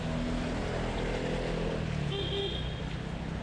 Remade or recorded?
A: recorded